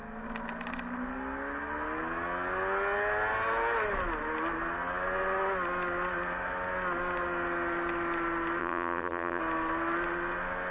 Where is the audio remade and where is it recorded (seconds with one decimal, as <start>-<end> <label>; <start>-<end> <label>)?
0.0-8.6 recorded; 8.6-9.4 remade; 9.4-10.7 recorded